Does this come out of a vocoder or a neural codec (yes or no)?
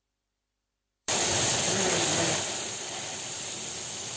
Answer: yes